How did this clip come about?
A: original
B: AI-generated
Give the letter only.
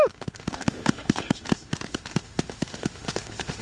B